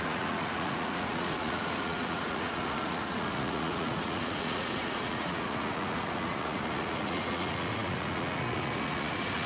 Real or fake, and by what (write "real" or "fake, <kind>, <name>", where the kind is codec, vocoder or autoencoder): fake, vocoder, Vocos